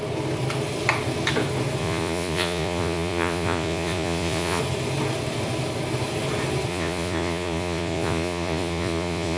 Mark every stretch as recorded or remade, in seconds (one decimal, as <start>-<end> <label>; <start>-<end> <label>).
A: 0.0-1.8 recorded; 1.8-4.6 remade; 4.6-6.7 recorded; 6.7-9.4 remade

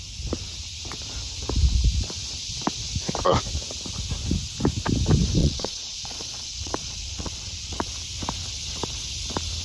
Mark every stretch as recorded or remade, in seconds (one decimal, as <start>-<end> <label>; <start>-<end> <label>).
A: 0.0-5.4 recorded; 5.4-7.9 remade; 7.9-9.6 recorded

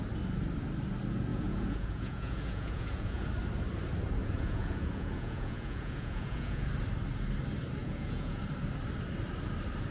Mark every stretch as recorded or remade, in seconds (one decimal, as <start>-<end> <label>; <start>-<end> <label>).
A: 0.0-1.3 recorded; 1.3-3.3 remade; 3.3-4.2 recorded; 4.2-6.7 remade; 6.7-7.8 recorded; 7.8-8.4 remade; 8.4-9.9 recorded

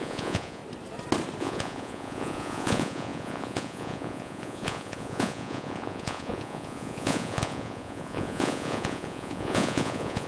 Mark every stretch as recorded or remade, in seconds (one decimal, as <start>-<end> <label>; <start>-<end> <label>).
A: 0.0-0.6 remade; 0.6-1.4 recorded; 1.4-10.3 remade